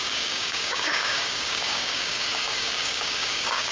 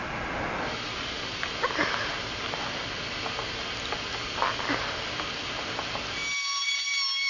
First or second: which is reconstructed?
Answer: first